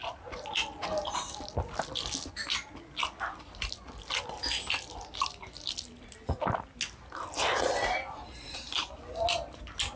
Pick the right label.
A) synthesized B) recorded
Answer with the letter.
B